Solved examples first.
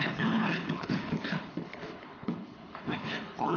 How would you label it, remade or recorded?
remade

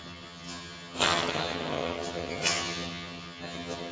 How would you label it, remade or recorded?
remade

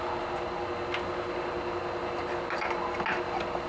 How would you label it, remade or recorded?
recorded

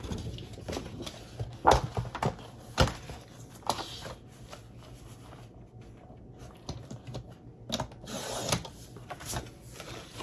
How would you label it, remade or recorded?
recorded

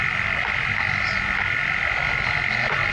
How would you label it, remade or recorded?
recorded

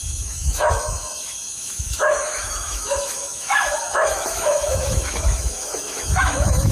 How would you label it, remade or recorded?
remade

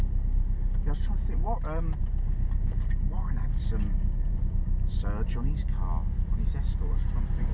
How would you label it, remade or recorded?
remade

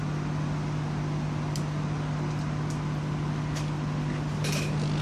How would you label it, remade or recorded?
recorded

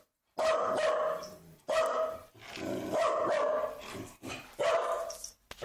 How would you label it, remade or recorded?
recorded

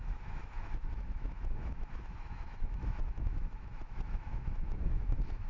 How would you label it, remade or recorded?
remade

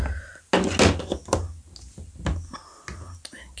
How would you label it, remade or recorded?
recorded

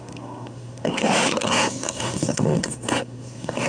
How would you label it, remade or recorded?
remade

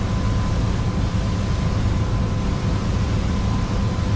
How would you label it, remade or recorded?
recorded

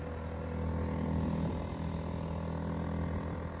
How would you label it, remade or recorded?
recorded